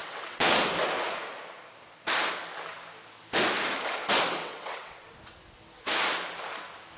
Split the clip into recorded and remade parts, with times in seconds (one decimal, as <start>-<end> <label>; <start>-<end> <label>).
0.0-0.6 remade; 0.6-4.4 recorded; 4.4-5.1 remade; 5.1-7.0 recorded